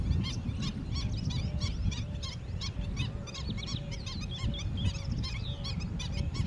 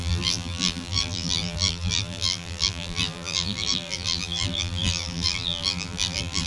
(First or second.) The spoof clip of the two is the second